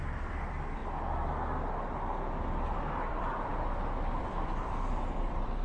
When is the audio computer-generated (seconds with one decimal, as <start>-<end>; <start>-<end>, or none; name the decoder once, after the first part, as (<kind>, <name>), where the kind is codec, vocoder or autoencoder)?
0.0-0.8 (vocoder, BigVGAN v2); 3.1-3.5; 4.2-5.6